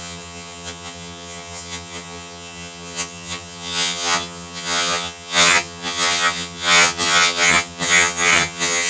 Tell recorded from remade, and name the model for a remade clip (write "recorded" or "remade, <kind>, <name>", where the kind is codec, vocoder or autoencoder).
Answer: remade, vocoder, HiFi-GAN